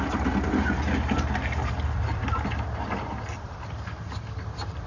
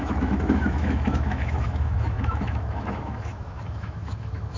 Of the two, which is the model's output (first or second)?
second